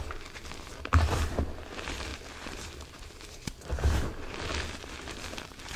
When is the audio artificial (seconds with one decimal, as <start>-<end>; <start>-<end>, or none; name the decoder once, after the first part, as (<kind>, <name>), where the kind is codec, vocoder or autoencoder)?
none